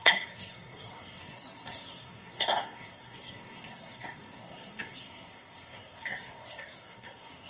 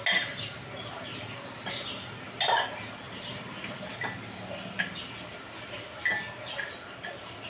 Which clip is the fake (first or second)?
first